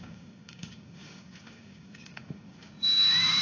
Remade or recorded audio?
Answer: remade